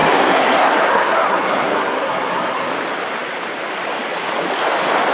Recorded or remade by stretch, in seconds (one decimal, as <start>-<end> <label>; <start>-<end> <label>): 0.0-2.7 remade; 2.7-5.1 recorded